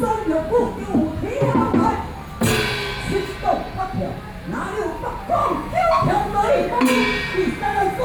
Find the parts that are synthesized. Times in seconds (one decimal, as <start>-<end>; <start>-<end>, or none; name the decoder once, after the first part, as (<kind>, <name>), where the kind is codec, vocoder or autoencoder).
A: 5.4-6.5 (autoencoder, DAC-VAE)

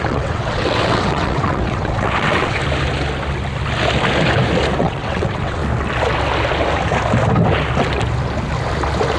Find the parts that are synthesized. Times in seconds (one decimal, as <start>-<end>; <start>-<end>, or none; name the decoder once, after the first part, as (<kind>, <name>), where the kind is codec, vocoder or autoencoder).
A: 0.0-2.6 (vocoder, WaveNeXt); 4.8-5.6